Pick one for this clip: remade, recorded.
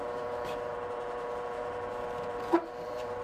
remade